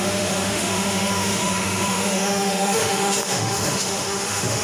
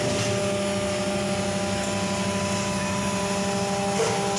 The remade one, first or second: first